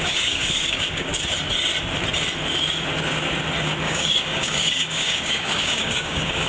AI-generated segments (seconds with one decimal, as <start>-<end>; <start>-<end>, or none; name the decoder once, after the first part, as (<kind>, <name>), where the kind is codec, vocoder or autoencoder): 0.0-1.1 (codec, DAC); 3.8-6.5